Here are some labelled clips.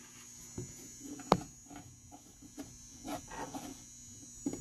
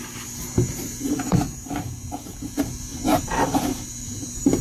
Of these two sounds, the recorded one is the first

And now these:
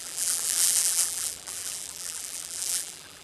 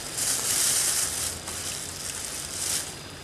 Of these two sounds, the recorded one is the second